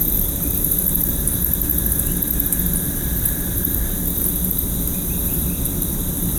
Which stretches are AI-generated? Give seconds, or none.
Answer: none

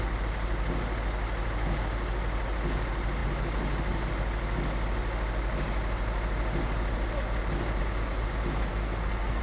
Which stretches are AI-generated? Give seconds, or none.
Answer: 8.7-9.4

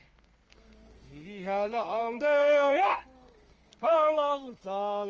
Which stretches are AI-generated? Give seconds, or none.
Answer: 0.0-5.1

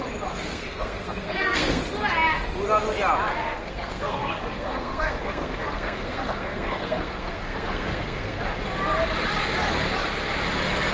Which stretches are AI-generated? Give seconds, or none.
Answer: 0.5-1.8; 3.4-8.4

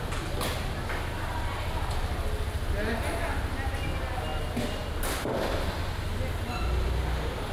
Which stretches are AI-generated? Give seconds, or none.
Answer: none

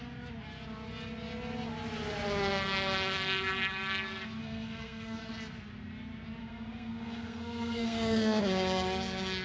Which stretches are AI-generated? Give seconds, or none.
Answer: 4.4-5.3; 6.4-8.4